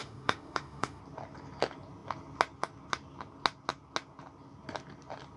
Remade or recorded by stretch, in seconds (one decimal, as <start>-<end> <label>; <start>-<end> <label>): 0.0-1.0 remade; 1.0-5.4 recorded